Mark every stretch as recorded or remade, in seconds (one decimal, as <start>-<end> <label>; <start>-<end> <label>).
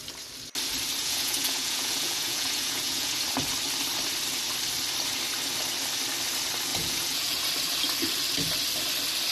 0.0-1.0 recorded; 1.0-3.2 remade; 3.2-6.7 recorded; 6.7-7.5 remade; 7.5-9.3 recorded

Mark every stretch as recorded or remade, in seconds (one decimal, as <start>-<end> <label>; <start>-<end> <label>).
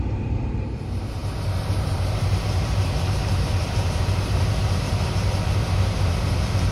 0.0-1.2 remade; 1.2-1.7 recorded; 1.7-6.7 remade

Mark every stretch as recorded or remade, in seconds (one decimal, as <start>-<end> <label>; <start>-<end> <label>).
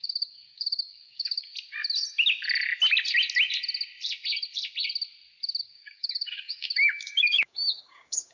0.0-1.5 remade; 1.5-5.6 recorded; 5.6-8.3 remade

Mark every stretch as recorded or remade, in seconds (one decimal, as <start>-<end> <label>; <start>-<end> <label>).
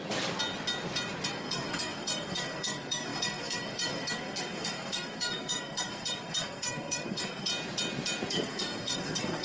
0.0-1.3 recorded; 1.3-7.5 remade; 7.5-8.3 recorded; 8.3-9.4 remade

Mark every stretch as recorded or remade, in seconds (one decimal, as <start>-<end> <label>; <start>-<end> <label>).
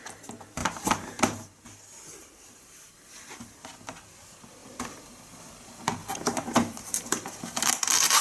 0.0-0.6 recorded; 0.6-1.6 remade; 1.6-2.2 recorded; 2.2-3.7 remade; 3.7-4.6 recorded; 4.6-5.4 remade; 5.4-6.0 recorded; 6.0-7.6 remade; 7.6-8.2 recorded